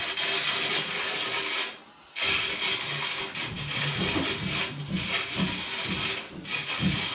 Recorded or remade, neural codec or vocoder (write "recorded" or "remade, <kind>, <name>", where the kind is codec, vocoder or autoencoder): recorded